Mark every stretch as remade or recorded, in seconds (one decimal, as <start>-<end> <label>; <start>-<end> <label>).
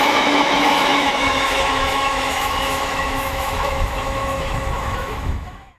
0.0-5.8 remade